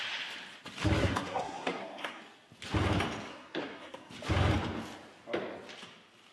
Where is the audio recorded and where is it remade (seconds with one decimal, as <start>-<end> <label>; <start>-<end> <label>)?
0.0-1.0 recorded; 1.0-2.2 remade; 2.2-3.3 recorded; 3.3-4.1 remade; 4.1-6.3 recorded